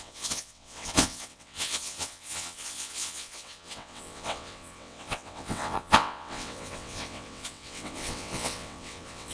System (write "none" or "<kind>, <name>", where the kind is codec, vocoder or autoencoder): vocoder, WaveNeXt